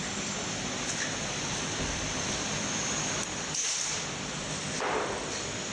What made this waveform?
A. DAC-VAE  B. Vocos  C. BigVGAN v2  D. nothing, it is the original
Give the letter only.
C